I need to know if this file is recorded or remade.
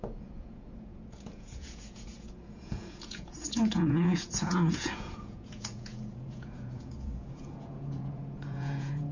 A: remade